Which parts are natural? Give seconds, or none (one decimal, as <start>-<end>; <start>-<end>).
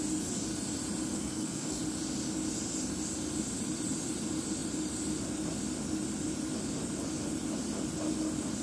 0.0-1.1; 1.8-8.6